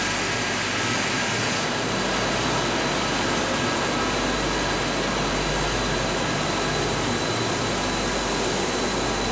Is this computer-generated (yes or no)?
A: no